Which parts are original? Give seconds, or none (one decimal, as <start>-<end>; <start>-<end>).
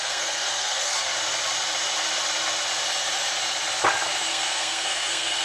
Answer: 1.1-4.3